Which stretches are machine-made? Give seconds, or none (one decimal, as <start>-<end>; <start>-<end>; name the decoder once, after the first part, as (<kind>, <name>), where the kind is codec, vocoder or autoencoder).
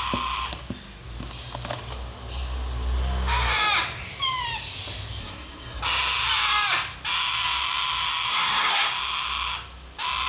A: 5.2-5.8 (codec, SNAC); 8.3-8.9